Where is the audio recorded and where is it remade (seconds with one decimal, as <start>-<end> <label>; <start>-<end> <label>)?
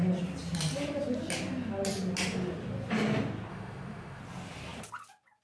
0.0-3.5 recorded; 3.5-4.2 remade; 4.2-5.4 recorded